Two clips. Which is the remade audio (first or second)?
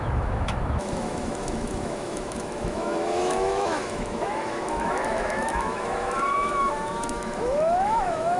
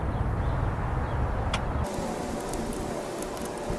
first